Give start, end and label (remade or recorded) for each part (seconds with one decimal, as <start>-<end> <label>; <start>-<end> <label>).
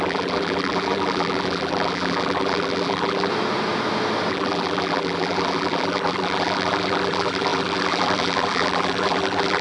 0.0-3.3 remade; 3.3-4.3 recorded; 4.3-9.6 remade